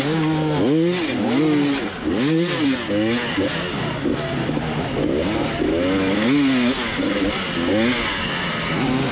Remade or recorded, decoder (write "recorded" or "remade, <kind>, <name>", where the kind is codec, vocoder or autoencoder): recorded